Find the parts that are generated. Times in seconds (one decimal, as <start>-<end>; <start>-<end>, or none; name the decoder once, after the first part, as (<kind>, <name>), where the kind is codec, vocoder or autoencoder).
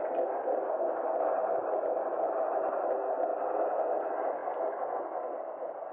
none